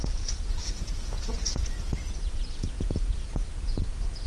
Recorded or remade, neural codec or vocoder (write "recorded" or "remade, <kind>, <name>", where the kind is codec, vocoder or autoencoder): remade, vocoder, Vocos